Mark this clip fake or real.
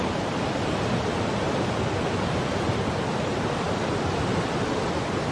real